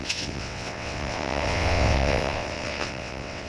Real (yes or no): no